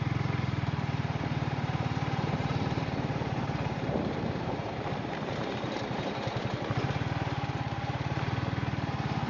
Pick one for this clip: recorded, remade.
remade